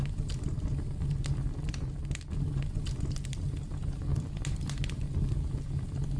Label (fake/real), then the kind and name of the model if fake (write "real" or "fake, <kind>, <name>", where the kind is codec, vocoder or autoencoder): real